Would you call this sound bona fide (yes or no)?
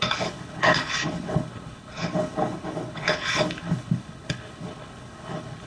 no